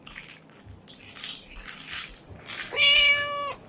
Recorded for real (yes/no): yes